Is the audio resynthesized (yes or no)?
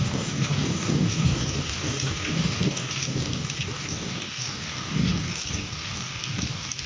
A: yes